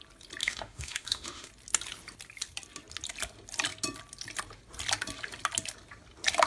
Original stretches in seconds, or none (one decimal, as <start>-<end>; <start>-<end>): 0.0-0.4; 1.5-6.5